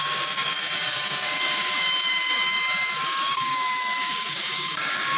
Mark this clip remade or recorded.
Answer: remade